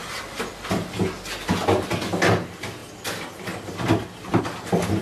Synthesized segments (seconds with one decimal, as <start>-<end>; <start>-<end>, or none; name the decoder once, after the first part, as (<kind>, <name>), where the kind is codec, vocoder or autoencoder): none